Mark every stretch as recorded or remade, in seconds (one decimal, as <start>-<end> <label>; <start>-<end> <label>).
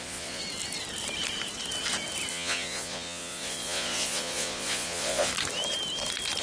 0.0-0.4 remade; 0.4-2.3 recorded; 2.3-5.3 remade; 5.3-6.4 recorded